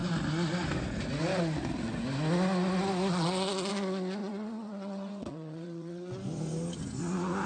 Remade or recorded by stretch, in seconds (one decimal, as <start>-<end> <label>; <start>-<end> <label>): 0.0-4.2 recorded; 4.2-6.1 remade; 6.1-7.5 recorded